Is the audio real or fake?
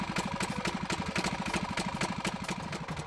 real